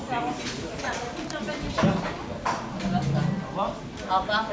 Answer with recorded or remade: recorded